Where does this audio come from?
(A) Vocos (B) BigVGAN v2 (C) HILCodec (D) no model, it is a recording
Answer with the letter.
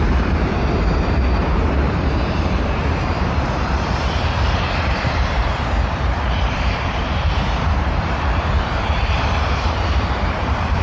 B